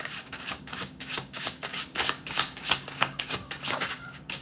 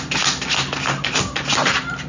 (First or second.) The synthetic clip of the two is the first